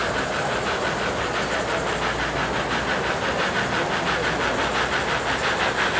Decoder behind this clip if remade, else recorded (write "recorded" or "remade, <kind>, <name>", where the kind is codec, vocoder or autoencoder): recorded